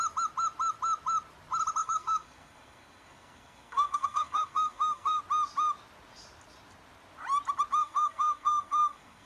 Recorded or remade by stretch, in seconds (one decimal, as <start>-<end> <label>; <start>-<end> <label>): 0.0-1.8 recorded; 1.8-5.2 remade; 5.2-7.8 recorded; 7.8-9.3 remade